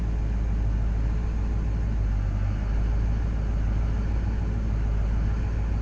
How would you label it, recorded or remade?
recorded